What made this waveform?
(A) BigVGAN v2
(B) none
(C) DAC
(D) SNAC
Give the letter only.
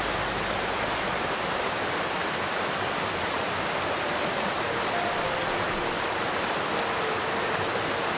B